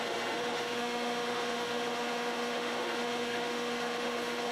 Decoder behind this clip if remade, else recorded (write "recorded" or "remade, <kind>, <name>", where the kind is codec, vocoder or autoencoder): remade, autoencoder, DAC-VAE